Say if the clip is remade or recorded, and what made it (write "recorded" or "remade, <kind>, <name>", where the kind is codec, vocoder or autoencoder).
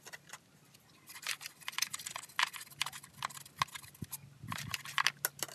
recorded